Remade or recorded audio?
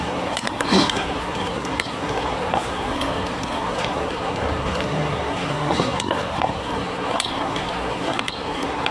remade